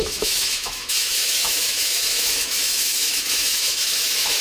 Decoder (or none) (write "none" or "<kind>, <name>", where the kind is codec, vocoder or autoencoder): autoencoder, DAC-VAE